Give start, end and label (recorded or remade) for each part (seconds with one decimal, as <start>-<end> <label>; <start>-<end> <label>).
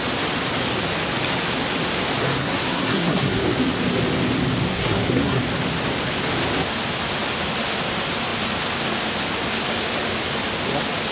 0.0-2.4 recorded; 2.4-3.4 remade; 3.4-4.7 recorded; 4.7-5.4 remade; 5.4-11.1 recorded